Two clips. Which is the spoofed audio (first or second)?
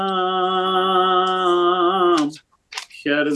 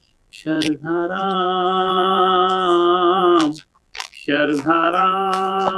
second